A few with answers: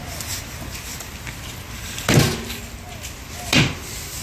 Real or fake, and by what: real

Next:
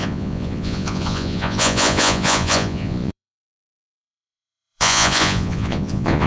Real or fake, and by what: fake, vocoder, Vocos